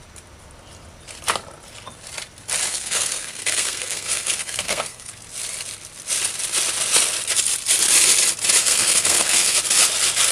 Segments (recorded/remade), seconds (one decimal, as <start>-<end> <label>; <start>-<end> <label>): 0.0-2.7 recorded; 2.7-5.1 remade; 5.1-8.6 recorded; 8.6-9.6 remade; 9.6-10.3 recorded